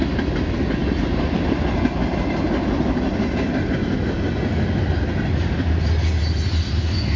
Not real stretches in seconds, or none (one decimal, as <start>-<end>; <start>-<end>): none